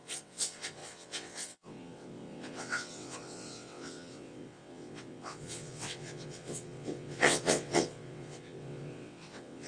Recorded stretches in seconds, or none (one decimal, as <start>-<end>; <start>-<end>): none